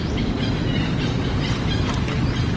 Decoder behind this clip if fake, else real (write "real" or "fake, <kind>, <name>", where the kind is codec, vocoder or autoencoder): real